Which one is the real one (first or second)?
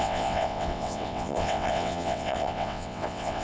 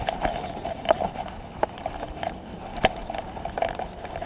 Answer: second